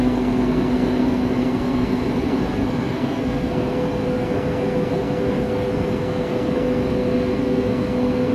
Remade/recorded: remade